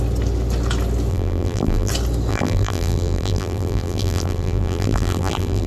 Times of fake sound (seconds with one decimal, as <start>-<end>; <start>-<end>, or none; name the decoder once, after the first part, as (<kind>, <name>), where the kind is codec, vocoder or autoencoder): 1.1-1.9 (vocoder, BigVGAN v2); 2.3-5.7